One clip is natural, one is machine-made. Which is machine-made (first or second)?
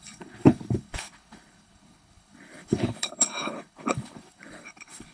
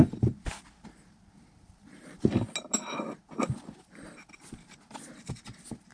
first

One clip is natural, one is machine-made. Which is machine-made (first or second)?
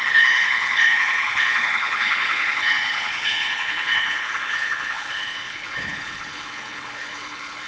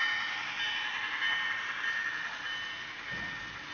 first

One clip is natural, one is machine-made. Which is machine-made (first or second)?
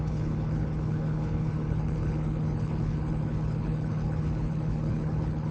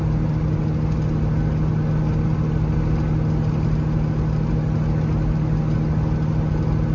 first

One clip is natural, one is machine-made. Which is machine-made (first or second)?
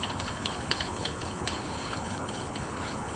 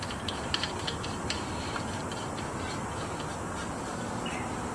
first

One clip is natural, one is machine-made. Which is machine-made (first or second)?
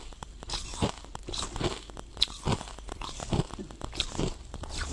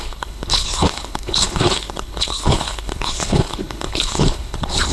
second